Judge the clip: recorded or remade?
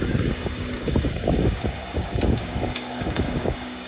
remade